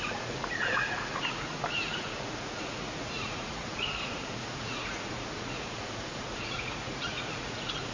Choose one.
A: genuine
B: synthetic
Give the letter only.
B